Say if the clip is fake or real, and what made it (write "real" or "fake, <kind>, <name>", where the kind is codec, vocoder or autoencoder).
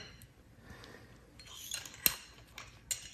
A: real